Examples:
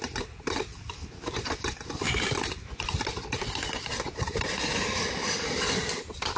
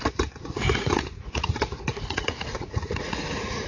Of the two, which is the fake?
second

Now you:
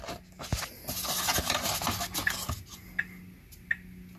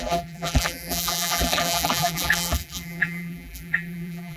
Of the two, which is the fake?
second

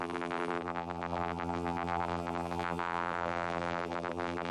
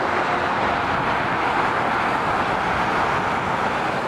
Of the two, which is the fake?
first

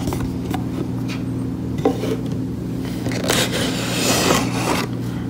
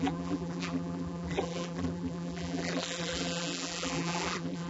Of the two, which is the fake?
second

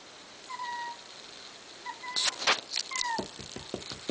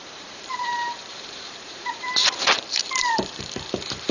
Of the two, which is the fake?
second